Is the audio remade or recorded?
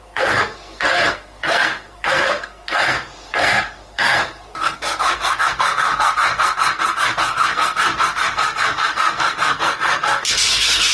remade